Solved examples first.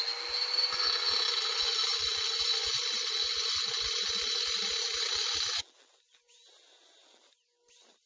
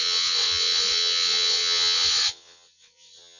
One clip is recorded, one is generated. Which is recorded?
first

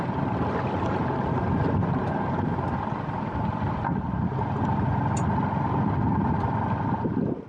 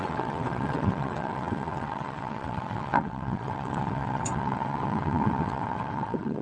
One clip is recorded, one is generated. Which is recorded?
first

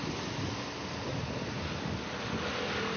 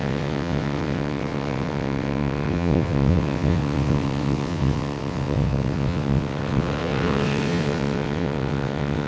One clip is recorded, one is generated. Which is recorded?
first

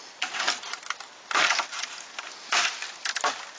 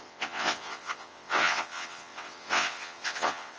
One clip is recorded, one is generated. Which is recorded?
first